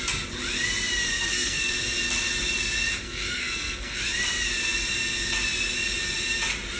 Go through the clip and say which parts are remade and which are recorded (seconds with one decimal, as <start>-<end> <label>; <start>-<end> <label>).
0.0-1.1 recorded; 1.1-1.7 remade; 1.7-3.0 recorded; 3.0-4.0 remade; 4.0-6.8 recorded

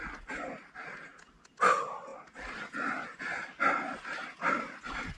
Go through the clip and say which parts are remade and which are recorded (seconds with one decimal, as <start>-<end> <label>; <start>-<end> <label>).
0.0-5.2 recorded

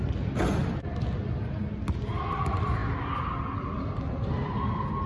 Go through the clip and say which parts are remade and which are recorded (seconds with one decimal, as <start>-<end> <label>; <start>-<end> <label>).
0.0-5.1 recorded

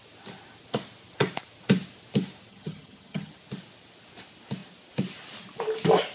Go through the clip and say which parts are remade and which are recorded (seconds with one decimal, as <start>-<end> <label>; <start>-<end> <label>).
0.0-2.5 recorded; 2.5-3.3 remade; 3.3-6.1 recorded